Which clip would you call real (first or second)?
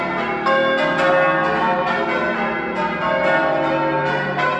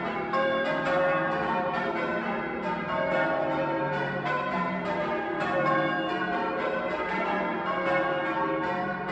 first